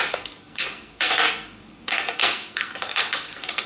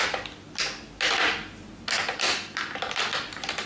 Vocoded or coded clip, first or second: first